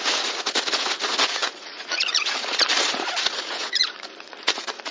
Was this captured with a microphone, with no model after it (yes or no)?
no